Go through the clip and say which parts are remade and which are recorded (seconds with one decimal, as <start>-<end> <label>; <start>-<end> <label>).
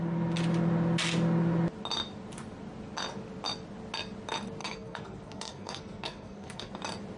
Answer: 0.0-4.6 recorded; 4.6-6.7 remade; 6.7-7.2 recorded